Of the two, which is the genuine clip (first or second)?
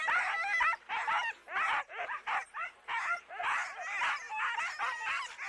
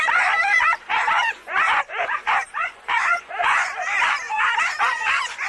first